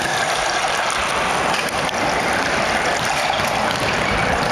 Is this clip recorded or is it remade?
remade